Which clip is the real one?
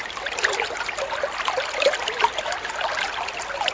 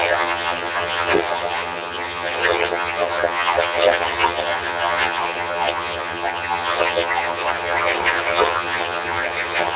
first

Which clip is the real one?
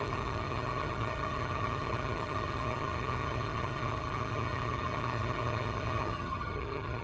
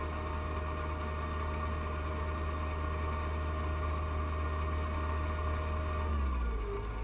second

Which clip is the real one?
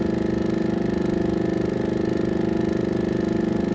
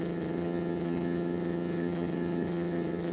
first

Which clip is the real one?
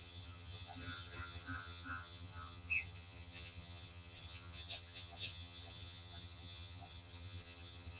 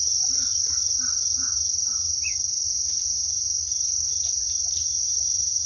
second